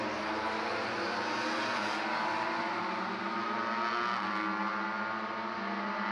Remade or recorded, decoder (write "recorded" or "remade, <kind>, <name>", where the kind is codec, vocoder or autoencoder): recorded